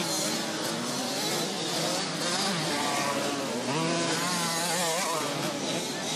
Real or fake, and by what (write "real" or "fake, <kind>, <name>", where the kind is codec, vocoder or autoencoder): real